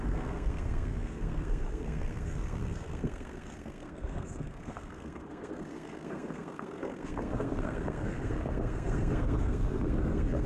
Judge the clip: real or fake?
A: fake